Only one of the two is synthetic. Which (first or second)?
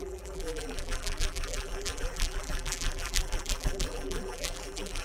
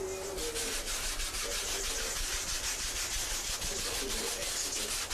first